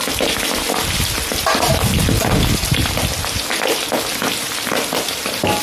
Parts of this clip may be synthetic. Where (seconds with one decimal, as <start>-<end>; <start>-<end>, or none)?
none